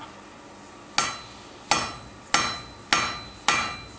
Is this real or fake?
real